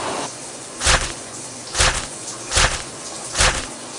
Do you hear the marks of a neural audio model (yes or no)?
yes